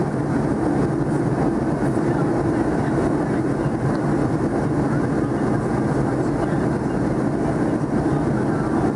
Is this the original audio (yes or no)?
yes